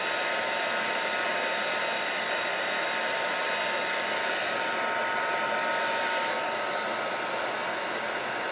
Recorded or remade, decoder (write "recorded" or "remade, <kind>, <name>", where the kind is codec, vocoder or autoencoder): recorded